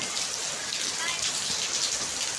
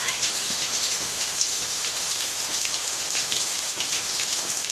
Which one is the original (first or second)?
first